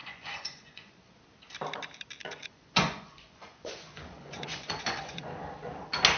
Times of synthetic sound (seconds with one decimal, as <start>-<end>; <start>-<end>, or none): 0.0-1.2; 2.2-5.4

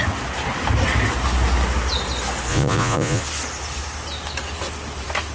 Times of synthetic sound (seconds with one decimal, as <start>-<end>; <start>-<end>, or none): 2.5-3.2